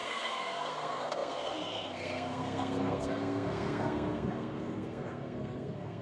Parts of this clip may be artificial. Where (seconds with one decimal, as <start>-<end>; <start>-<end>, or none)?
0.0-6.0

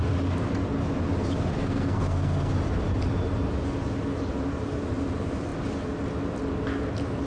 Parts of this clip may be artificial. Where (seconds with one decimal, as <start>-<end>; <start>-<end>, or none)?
1.6-2.5

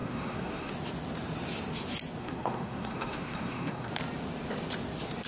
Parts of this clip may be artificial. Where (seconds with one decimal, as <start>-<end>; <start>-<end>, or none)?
0.0-0.7; 2.2-3.9

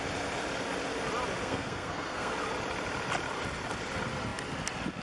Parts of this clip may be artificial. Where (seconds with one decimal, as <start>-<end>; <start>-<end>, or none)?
1.4-2.3